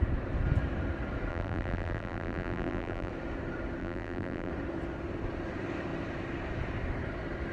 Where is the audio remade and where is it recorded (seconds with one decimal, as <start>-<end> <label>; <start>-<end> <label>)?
0.0-1.3 recorded; 1.3-3.1 remade; 3.1-3.8 recorded; 3.8-4.5 remade; 4.5-7.5 recorded